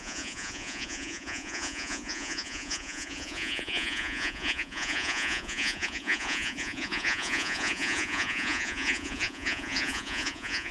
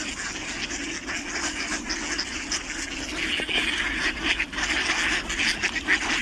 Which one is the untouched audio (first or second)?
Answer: second